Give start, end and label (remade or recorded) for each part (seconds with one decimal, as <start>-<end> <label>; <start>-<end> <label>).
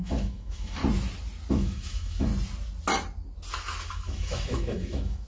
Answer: 0.0-0.8 remade; 0.8-1.5 recorded; 1.5-2.3 remade; 2.3-3.9 recorded; 3.9-5.3 remade